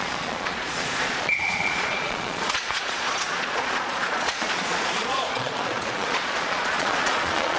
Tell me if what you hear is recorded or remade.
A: remade